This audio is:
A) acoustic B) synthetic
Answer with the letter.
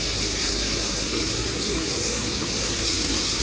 B